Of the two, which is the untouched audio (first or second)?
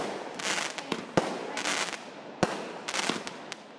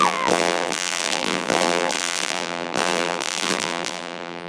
first